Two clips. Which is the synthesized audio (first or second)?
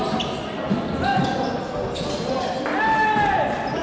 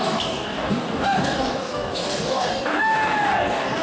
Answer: second